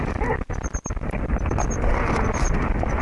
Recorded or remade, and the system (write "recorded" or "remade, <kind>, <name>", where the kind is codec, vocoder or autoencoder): recorded